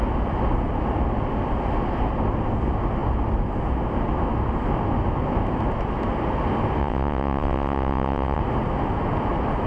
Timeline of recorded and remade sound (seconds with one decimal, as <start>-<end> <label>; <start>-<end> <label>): 0.0-6.8 recorded; 6.8-8.4 remade; 8.4-9.7 recorded